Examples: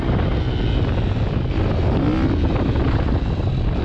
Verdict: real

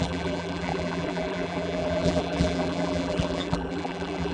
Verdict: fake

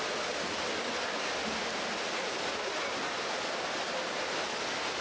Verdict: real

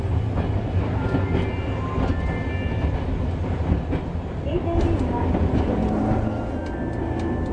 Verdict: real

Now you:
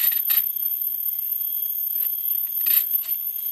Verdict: fake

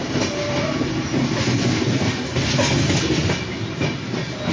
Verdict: real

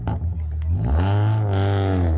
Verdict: real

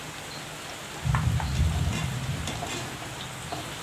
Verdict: real